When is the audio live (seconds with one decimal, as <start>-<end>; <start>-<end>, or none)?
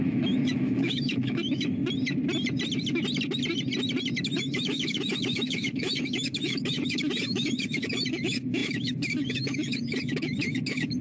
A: 1.8-4.2